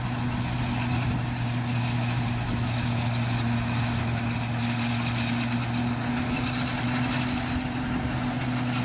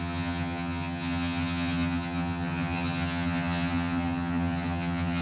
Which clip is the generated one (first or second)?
second